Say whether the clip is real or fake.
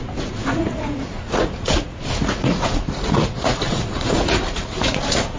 fake